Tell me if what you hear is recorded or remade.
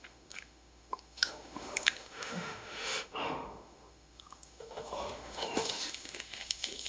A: remade